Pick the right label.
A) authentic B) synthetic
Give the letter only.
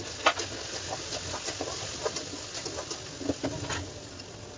A